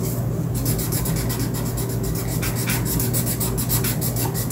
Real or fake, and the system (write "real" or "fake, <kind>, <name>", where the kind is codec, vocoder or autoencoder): real